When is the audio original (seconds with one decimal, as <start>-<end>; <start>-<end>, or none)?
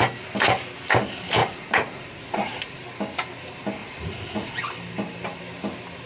0.0-1.4; 2.8-3.8; 4.6-6.1